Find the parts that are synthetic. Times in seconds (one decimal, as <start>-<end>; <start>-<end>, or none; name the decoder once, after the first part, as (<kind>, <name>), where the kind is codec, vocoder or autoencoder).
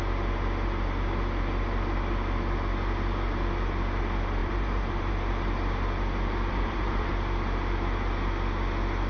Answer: 4.4-5.1 (vocoder, BigVGAN v2); 6.5-7.1